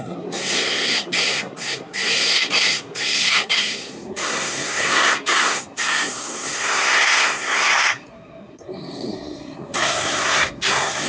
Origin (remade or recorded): remade